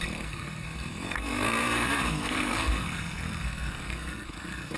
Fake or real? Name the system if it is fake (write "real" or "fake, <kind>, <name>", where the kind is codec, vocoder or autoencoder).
fake, codec, SNAC